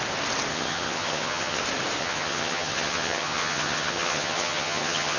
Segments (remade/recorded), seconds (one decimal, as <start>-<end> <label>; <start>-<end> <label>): 0.0-0.5 recorded; 0.5-1.6 remade; 1.6-2.0 recorded; 2.0-5.2 remade